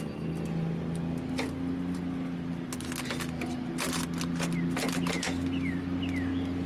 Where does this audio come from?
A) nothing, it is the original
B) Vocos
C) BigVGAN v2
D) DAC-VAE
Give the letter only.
A